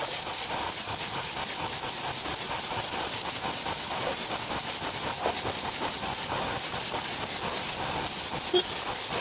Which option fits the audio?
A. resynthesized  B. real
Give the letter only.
B